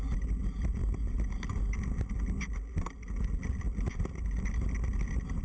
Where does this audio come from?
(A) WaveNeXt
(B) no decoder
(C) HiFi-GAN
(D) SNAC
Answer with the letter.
B